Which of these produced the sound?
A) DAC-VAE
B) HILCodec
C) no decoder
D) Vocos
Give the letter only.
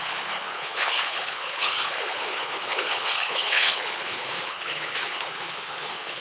B